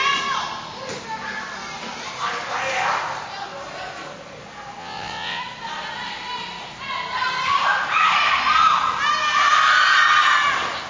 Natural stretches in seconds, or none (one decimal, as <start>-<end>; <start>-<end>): 0.0-4.8; 5.4-10.9